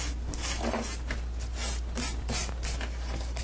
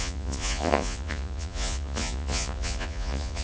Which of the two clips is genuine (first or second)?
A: first